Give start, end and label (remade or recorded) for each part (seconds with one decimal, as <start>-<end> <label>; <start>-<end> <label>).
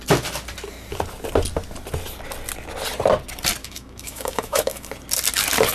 0.0-3.6 recorded; 3.6-4.9 remade; 4.9-5.7 recorded